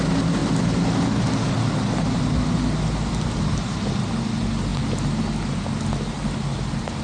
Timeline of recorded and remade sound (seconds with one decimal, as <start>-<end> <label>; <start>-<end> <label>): 0.0-7.0 recorded